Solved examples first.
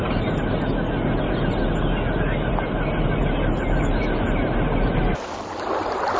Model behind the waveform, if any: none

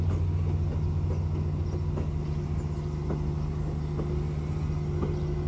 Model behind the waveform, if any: none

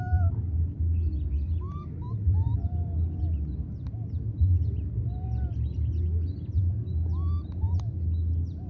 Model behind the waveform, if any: none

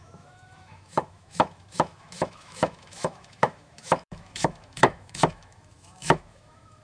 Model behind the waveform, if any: autoencoder, DAC-VAE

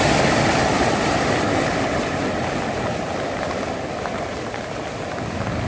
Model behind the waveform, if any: none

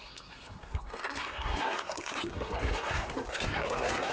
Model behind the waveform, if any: codec, SNAC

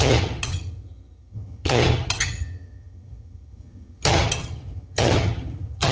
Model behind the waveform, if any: vocoder, HiFi-GAN